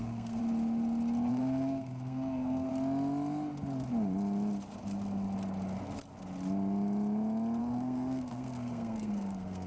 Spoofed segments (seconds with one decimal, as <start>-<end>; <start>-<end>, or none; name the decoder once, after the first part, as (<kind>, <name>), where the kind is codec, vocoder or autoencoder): 0.0-0.4 (codec, SNAC); 1.3-2.7; 7.6-9.7